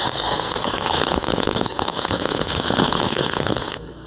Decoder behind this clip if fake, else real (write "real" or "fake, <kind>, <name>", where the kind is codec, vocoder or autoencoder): fake, codec, SNAC